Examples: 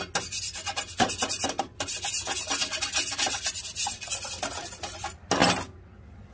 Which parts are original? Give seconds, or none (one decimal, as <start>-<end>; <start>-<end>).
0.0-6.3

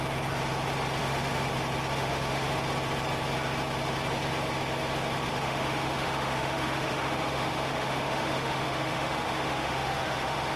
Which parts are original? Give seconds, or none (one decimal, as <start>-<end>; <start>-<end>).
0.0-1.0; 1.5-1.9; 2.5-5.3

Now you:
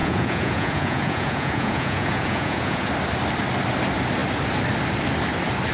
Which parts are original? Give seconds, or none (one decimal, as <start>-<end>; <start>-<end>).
2.9-5.7

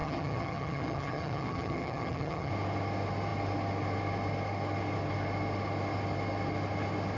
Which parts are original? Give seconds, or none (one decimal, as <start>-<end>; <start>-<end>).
2.5-7.2

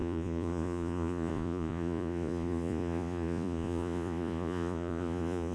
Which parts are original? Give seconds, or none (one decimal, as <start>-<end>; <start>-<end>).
none

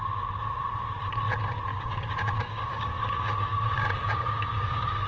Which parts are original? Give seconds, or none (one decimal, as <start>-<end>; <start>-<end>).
0.0-1.7

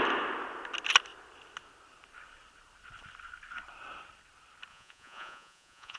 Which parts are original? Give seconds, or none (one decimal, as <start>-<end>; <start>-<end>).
0.0-4.7

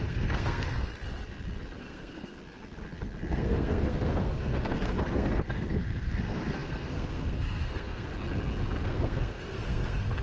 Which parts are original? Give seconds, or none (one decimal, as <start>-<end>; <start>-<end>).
0.9-1.8; 2.3-3.3; 8.1-8.8